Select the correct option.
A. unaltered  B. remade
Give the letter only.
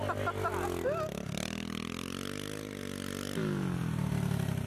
A